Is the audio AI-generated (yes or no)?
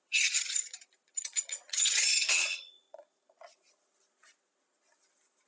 yes